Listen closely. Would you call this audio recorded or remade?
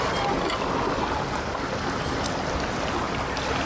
recorded